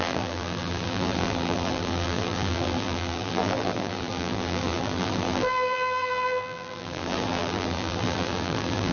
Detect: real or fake fake